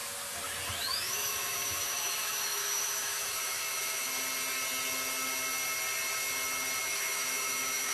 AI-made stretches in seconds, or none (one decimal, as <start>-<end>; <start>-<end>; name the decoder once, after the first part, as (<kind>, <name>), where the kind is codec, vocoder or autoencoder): 0.8-4.1 (autoencoder, DAC-VAE); 6.8-7.9